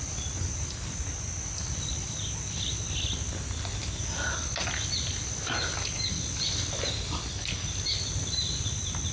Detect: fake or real real